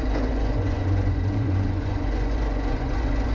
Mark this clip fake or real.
fake